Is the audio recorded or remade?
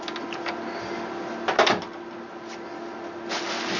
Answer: recorded